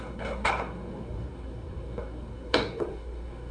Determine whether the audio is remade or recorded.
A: remade